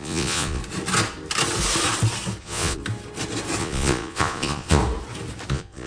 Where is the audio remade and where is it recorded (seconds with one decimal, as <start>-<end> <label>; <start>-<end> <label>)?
0.0-0.6 remade; 0.6-2.4 recorded; 2.4-2.8 remade; 2.8-3.6 recorded; 3.6-4.8 remade; 4.8-5.5 recorded; 5.5-5.9 remade